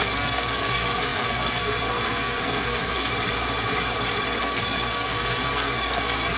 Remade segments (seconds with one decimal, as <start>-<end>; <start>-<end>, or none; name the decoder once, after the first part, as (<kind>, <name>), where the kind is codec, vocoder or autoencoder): 0.0-3.1 (codec, SNAC); 4.4-6.4